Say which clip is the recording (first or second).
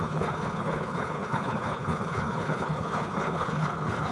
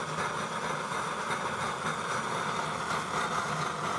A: second